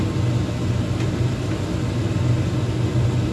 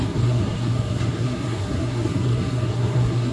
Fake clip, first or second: second